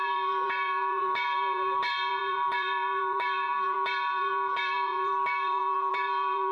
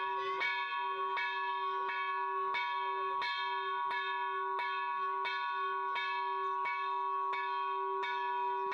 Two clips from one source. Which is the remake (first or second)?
first